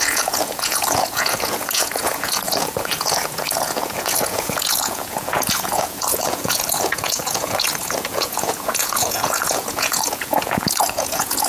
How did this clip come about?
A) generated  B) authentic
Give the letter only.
A